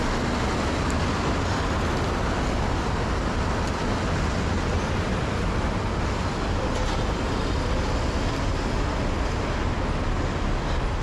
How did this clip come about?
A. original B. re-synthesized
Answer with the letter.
A